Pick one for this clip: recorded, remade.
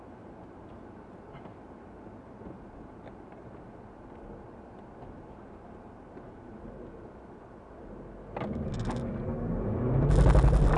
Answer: recorded